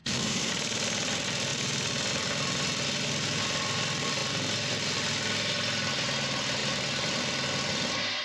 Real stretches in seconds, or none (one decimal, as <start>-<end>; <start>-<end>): 0.5-8.2